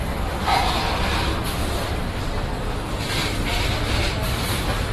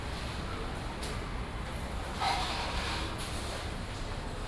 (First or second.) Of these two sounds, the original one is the second